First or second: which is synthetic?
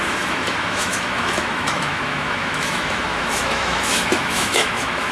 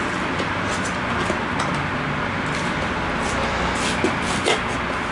first